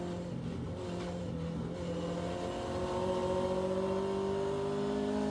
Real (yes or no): yes